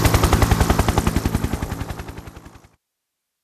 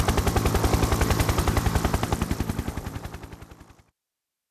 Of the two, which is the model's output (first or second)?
second